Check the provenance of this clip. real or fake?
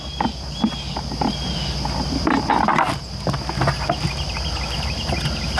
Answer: real